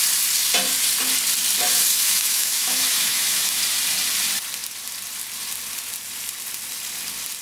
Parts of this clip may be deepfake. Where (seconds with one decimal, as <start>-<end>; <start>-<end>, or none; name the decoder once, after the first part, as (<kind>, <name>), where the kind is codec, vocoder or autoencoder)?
1.9-3.6 (autoencoder, DAC-VAE)